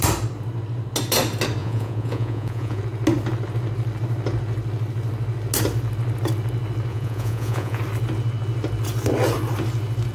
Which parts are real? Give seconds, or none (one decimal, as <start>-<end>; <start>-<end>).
0.0-1.6; 2.8-6.9; 7.8-10.1